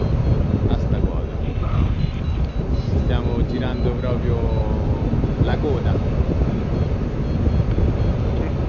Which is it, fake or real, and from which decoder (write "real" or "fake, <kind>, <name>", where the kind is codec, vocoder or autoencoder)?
real